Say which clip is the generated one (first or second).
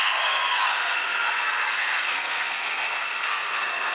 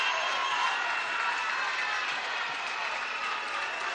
first